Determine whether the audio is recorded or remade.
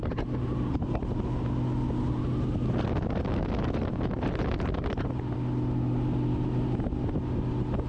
recorded